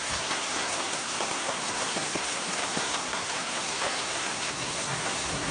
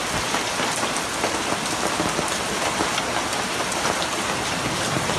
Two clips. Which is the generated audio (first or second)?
first